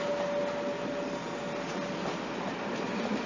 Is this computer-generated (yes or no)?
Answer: no